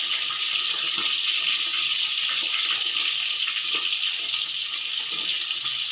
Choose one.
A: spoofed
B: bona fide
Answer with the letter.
B